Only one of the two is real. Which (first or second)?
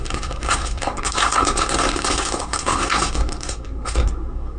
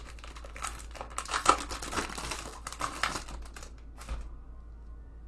second